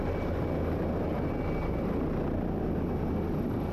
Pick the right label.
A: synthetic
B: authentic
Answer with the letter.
B